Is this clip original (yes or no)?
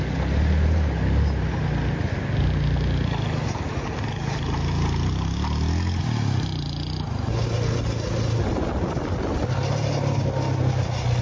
yes